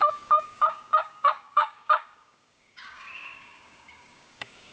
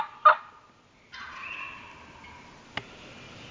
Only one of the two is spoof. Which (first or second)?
first